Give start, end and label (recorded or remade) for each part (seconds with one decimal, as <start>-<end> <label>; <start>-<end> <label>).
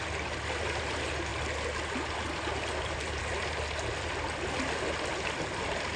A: 0.0-6.0 recorded